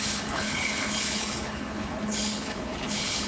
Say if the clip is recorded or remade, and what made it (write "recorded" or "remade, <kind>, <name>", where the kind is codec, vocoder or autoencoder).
remade, codec, HILCodec